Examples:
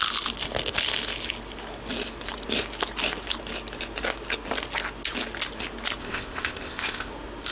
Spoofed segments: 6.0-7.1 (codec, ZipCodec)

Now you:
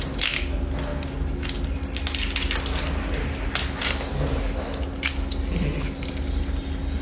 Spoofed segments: none

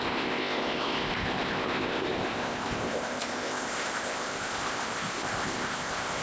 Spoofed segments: 0.0-6.2 (codec, ZipCodec)

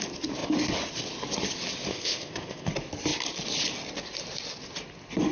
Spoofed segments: 1.9-2.7 (codec, ZipCodec)

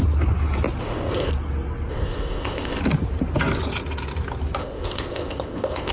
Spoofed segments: 0.8-1.3 (codec, ZipCodec); 1.9-2.8; 4.6-5.9

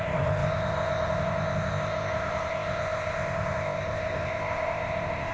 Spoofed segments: 0.0-5.3 (codec, ZipCodec)